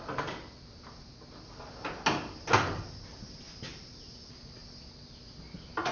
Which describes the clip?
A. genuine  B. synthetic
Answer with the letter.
A